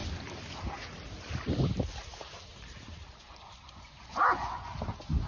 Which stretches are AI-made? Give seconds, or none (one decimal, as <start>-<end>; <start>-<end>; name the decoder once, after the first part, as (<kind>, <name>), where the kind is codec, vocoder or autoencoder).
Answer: 3.2-4.7 (vocoder, Vocos)